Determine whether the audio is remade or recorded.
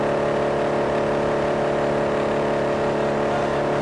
recorded